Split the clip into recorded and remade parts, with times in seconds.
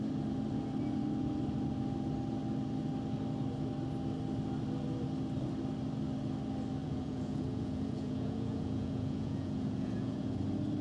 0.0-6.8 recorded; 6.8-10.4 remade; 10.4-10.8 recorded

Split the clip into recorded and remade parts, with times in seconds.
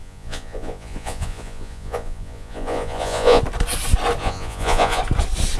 0.0-3.4 remade; 3.4-4.2 recorded; 4.2-5.0 remade; 5.0-5.6 recorded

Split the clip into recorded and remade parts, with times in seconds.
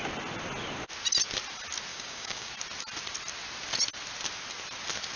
0.0-1.9 recorded; 1.9-2.5 remade; 2.5-5.2 recorded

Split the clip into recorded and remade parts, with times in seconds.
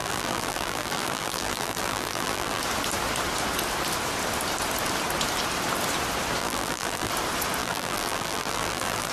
0.0-2.6 remade; 2.6-6.4 recorded; 6.4-7.1 remade; 7.1-7.6 recorded; 7.6-9.1 remade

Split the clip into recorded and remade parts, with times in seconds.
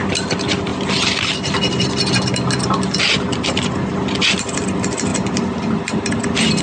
0.0-6.6 recorded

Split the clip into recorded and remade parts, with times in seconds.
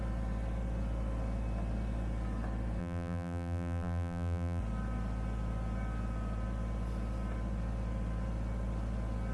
0.0-2.8 recorded; 2.8-4.6 remade; 4.6-9.3 recorded